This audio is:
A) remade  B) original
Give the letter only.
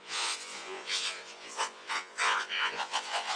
A